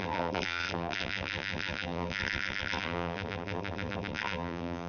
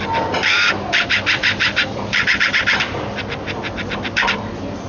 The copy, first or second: first